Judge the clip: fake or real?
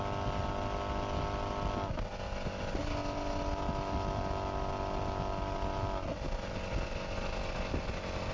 real